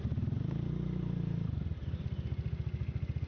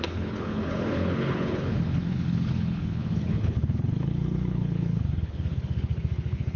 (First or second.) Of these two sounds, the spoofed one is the second